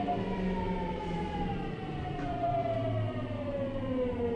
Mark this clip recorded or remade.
recorded